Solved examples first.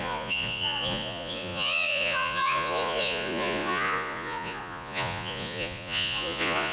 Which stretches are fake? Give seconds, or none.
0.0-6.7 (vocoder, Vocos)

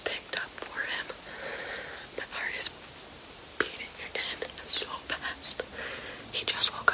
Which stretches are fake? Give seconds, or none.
none

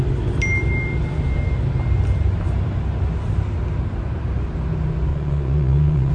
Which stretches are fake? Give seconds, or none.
5.1-6.1 (vocoder, Vocos)

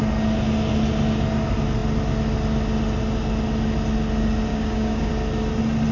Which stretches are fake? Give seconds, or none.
4.5-5.1 (codec, DAC)

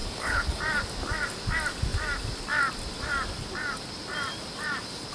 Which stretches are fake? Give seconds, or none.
0.0-0.6 (codec, HILCodec)